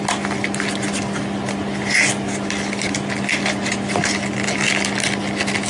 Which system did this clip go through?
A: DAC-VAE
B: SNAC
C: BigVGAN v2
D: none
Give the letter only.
D